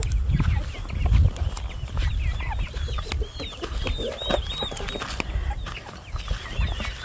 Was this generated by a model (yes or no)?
no